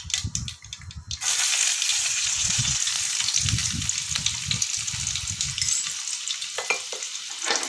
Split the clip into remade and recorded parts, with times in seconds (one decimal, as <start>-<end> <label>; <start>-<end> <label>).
0.0-1.9 recorded; 1.9-2.8 remade; 2.8-7.7 recorded